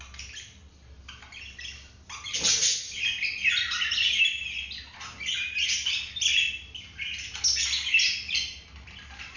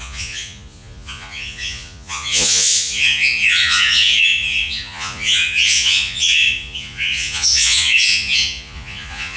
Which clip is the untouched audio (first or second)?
first